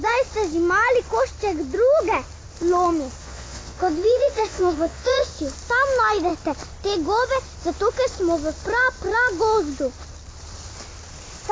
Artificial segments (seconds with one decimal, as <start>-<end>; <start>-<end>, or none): 3.2-5.3

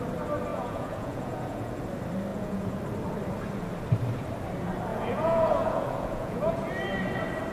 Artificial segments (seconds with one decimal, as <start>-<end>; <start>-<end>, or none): 0.5-1.8; 2.3-2.8; 4.9-6.6